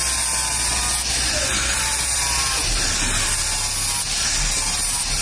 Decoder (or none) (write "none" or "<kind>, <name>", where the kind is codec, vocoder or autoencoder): none